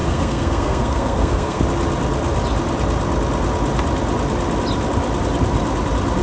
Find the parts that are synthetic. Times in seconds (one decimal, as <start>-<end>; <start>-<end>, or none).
0.0-1.6